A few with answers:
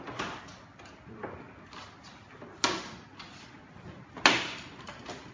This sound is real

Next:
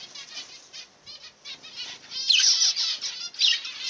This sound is real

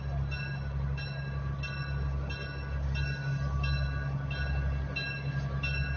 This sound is real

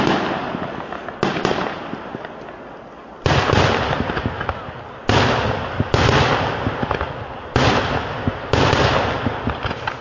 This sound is real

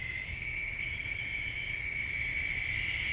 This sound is real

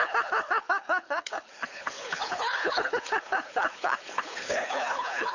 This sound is fake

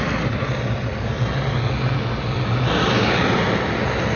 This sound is real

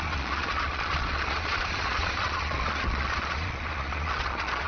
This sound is fake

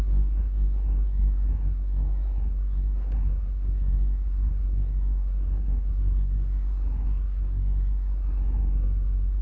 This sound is fake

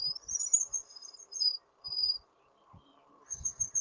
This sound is real